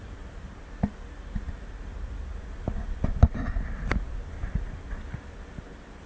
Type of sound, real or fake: fake